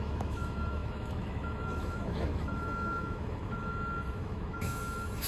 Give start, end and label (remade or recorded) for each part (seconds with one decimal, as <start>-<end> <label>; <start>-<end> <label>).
0.0-5.3 remade